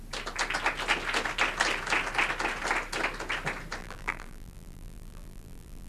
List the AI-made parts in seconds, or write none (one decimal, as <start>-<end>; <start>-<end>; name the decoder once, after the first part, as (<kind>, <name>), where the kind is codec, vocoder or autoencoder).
3.8-5.9 (vocoder, BigVGAN v2)